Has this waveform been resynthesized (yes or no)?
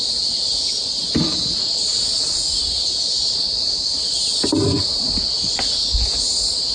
no